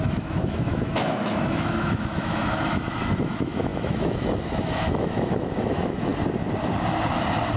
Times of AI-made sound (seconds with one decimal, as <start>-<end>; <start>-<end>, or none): 0.0-6.1